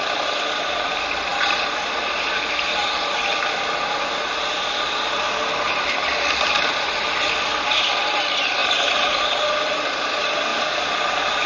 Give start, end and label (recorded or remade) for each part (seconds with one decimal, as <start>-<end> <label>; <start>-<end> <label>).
0.0-11.5 recorded